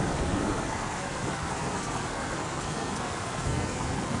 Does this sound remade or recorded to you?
remade